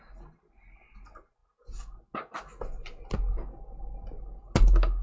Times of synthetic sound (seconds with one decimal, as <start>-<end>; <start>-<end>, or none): none